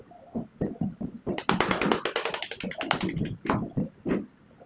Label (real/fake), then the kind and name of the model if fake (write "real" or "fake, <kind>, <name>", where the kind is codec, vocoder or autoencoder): real